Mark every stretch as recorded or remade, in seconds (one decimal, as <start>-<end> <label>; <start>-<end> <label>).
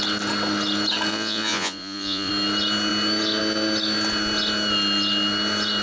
0.0-1.1 recorded; 1.1-2.3 remade; 2.3-5.8 recorded